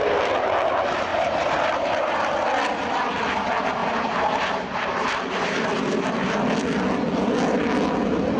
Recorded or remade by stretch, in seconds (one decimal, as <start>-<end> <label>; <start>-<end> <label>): 0.0-1.1 recorded; 1.1-2.0 remade; 2.0-3.8 recorded; 3.8-5.6 remade; 5.6-8.4 recorded

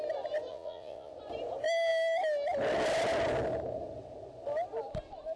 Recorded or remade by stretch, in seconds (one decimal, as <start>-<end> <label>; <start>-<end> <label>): 0.0-0.5 recorded; 0.5-1.1 remade; 1.1-5.4 recorded

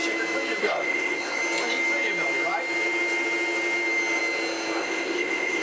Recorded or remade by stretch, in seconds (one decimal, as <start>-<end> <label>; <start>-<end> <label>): 0.0-0.6 recorded; 0.6-1.4 remade; 1.4-4.8 recorded; 4.8-5.6 remade